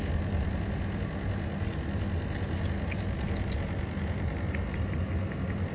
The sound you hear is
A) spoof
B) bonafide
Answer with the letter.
B